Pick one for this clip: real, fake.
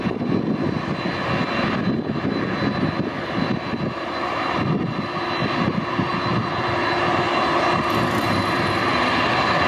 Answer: real